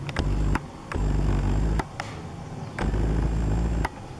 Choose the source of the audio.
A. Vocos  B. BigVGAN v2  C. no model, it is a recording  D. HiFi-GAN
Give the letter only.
C